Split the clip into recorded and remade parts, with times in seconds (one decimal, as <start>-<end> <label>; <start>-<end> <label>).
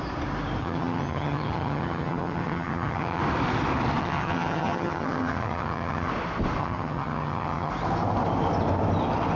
0.0-0.6 recorded; 0.6-3.2 remade; 3.2-4.0 recorded; 4.0-6.1 remade; 6.1-6.6 recorded; 6.6-7.7 remade; 7.7-9.4 recorded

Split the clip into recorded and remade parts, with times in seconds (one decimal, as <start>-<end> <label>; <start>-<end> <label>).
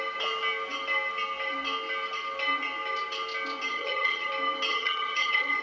0.0-3.7 recorded; 3.7-4.3 remade; 4.3-4.7 recorded; 4.7-5.6 remade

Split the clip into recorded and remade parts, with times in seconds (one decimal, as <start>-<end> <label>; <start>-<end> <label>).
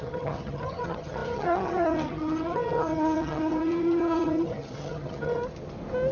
0.0-5.4 remade; 5.4-6.1 recorded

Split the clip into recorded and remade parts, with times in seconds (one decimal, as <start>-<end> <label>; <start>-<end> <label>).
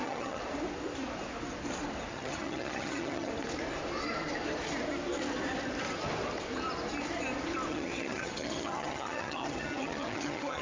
0.0-0.4 remade; 0.4-2.1 recorded; 2.1-3.3 remade; 3.3-7.7 recorded; 7.7-10.6 remade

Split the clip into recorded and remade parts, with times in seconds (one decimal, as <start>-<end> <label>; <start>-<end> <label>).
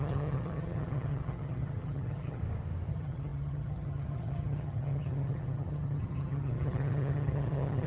0.0-2.4 remade; 2.4-2.9 recorded; 2.9-7.9 remade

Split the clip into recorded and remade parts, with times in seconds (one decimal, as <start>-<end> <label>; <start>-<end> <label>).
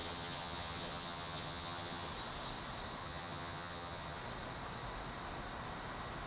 0.0-2.1 remade; 2.1-3.0 recorded; 3.0-4.2 remade; 4.2-6.3 recorded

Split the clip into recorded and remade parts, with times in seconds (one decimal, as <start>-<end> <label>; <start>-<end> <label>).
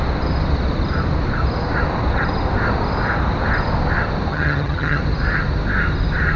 0.0-4.3 recorded; 4.3-5.0 remade; 5.0-6.4 recorded